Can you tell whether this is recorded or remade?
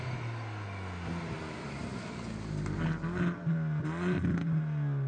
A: recorded